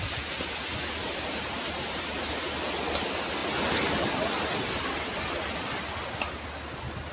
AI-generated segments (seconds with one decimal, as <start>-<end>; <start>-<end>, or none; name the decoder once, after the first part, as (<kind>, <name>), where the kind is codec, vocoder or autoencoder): 1.0-2.4 (vocoder, BigVGAN v2)